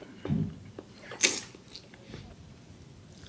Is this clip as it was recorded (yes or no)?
yes